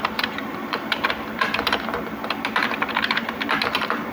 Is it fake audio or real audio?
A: fake